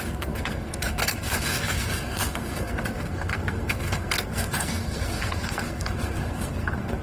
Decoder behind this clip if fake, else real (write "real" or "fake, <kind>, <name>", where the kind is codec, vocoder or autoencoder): fake, codec, SNAC